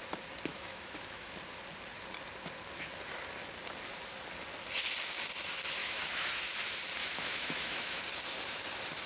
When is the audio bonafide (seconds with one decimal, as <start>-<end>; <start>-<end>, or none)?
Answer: 0.0-0.5; 1.3-5.8; 6.5-7.0; 8.0-9.1